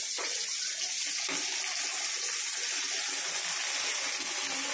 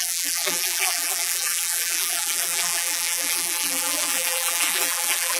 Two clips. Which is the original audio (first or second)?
first